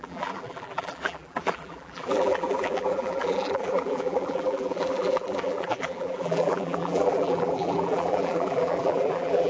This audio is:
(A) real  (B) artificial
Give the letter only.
B